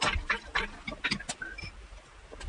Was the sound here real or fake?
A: real